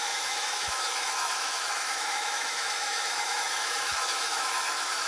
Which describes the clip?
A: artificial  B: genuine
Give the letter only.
A